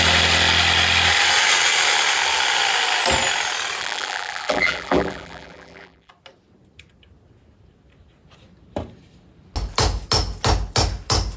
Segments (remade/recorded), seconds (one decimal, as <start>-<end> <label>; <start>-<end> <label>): 0.0-3.8 recorded; 3.8-6.1 remade; 6.1-11.4 recorded